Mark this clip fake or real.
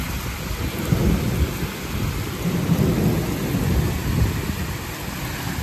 real